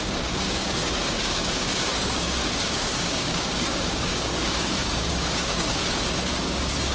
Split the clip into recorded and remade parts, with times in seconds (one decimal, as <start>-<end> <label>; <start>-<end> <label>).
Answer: 0.0-5.8 remade; 5.8-6.4 recorded; 6.4-6.9 remade